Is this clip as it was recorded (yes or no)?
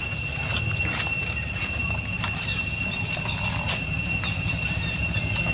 yes